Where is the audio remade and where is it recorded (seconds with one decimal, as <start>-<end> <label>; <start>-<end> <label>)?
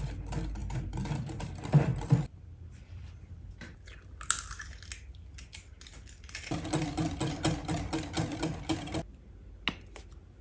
0.0-10.4 recorded